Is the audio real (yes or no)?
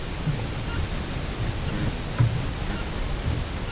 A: no